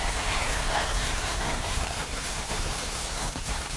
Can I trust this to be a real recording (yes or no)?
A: no